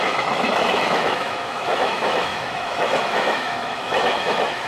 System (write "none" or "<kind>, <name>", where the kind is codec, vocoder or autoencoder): autoencoder, DAC-VAE